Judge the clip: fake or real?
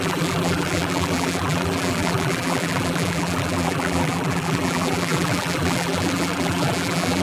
fake